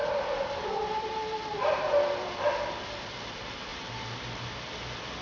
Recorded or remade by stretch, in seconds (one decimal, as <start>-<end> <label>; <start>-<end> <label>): 0.0-2.5 remade; 2.5-3.7 recorded; 3.7-4.5 remade; 4.5-5.2 recorded